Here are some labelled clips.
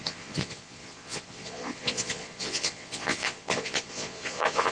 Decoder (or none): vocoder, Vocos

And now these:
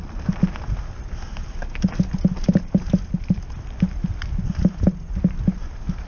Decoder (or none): vocoder, BigVGAN v2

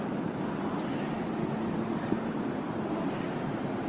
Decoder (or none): none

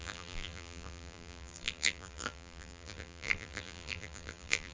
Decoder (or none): vocoder, BigVGAN v2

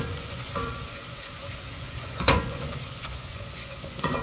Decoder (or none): vocoder, Vocos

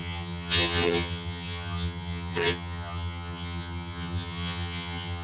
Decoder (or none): vocoder, HiFi-GAN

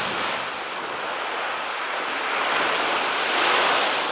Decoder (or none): none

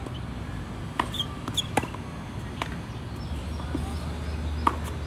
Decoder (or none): none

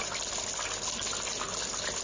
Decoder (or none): none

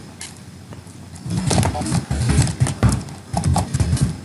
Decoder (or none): none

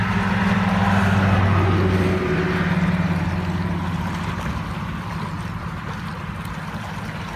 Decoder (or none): none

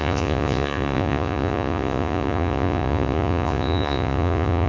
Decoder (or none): vocoder, Vocos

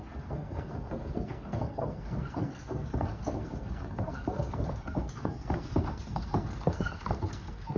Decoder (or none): codec, SNAC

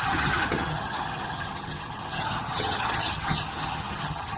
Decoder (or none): vocoder, HiFi-GAN